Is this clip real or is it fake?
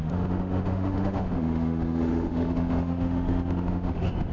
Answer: fake